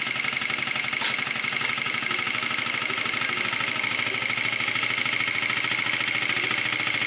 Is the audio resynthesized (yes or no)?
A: no